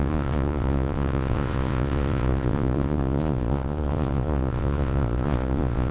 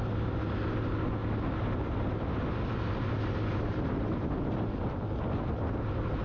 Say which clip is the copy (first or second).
first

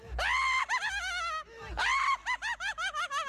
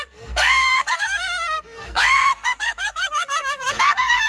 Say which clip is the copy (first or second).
second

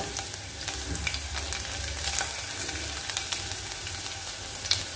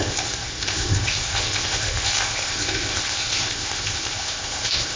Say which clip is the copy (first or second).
second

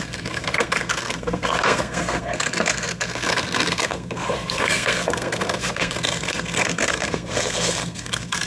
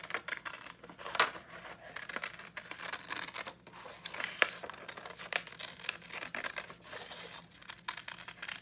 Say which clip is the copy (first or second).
first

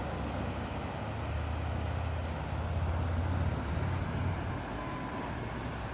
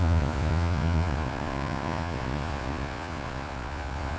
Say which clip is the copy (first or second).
second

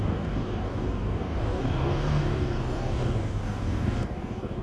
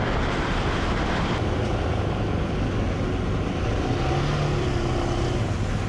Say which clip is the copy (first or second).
first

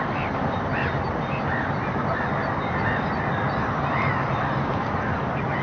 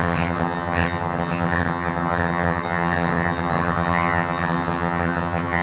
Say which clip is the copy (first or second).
second